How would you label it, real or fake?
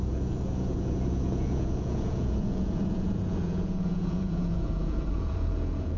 fake